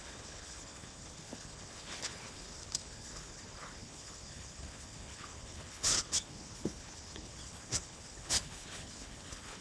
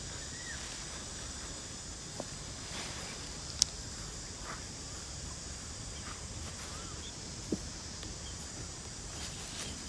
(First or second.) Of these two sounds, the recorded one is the second